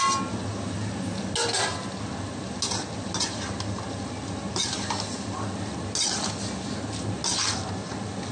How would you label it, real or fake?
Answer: real